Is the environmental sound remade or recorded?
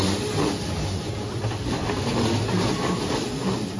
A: recorded